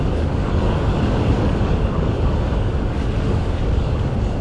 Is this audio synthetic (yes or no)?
yes